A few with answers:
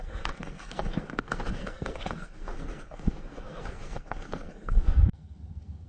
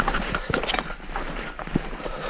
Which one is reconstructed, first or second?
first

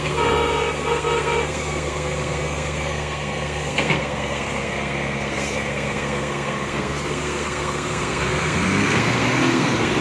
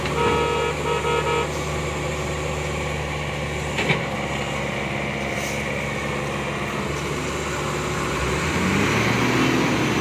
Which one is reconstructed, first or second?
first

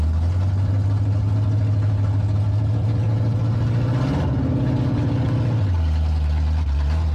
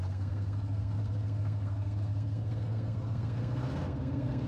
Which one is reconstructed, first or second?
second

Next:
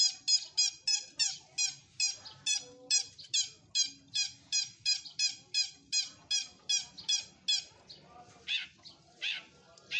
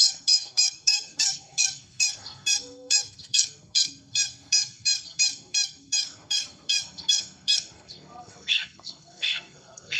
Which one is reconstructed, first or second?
second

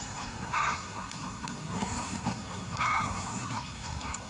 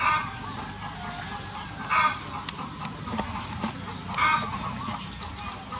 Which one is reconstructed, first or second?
first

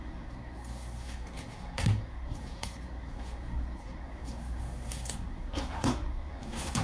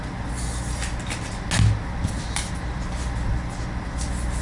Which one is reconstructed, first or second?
first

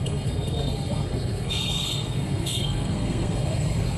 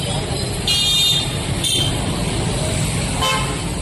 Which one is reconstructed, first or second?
first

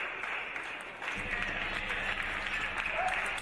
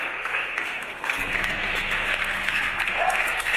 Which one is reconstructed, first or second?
second